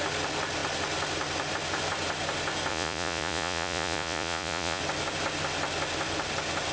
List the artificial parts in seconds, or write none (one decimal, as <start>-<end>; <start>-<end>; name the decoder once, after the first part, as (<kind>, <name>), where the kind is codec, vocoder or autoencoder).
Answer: 2.7-4.8 (vocoder, Vocos)